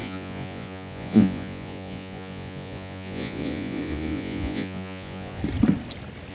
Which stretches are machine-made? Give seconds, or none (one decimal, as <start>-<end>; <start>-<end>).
0.0-5.4